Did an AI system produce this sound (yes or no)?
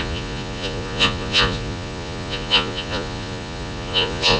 yes